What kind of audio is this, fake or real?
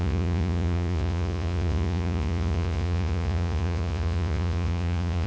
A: fake